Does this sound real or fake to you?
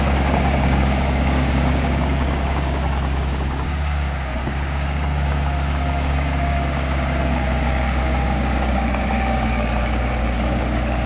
fake